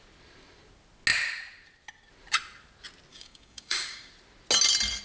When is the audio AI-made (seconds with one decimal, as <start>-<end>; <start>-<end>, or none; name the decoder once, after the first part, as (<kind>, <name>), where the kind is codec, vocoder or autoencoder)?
3.1-4.1 (codec, DAC)